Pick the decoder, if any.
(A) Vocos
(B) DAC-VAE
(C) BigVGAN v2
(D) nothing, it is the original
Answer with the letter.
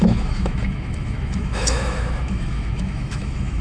B